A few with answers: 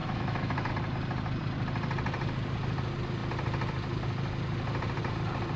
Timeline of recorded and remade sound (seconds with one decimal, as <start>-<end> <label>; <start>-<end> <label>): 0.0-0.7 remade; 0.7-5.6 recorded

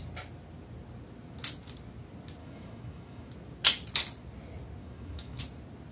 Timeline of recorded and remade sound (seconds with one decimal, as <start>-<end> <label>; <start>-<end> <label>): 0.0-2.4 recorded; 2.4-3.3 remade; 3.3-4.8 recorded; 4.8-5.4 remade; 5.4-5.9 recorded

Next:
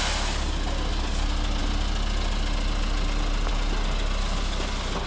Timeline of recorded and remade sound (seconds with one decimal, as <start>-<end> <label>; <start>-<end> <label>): 0.0-5.1 recorded

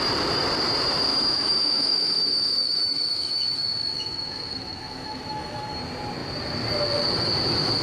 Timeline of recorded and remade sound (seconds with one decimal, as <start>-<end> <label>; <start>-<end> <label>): 0.0-1.1 recorded; 1.1-5.8 remade; 5.8-7.8 recorded

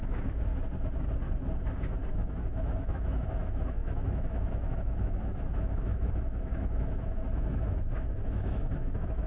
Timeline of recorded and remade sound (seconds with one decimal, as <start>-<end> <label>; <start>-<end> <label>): 0.0-0.5 remade; 0.5-2.1 recorded; 2.1-9.3 remade

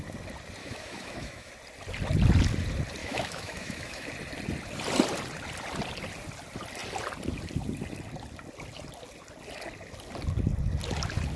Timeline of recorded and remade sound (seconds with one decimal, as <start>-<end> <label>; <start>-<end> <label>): 0.0-0.6 recorded; 0.6-1.5 remade; 1.5-3.0 recorded; 3.0-4.1 remade; 4.1-11.4 recorded

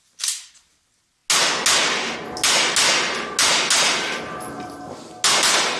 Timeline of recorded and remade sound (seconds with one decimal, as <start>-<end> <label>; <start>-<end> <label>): 0.0-5.8 recorded

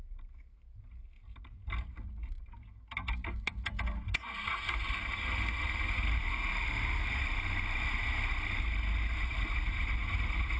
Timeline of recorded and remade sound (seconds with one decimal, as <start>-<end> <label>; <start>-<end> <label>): 0.0-10.6 recorded